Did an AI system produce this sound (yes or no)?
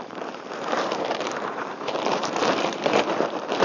yes